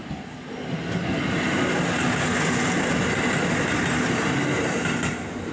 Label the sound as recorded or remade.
recorded